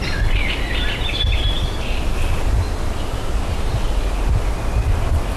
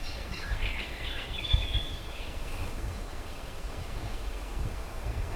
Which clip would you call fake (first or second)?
second